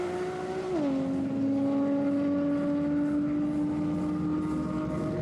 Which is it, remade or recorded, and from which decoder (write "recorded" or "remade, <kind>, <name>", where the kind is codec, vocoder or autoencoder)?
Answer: recorded